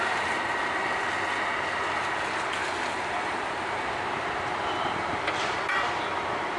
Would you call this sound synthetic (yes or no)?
no